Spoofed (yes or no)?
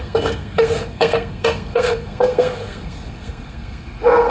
yes